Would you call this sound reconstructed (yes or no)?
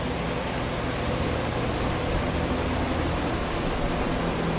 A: no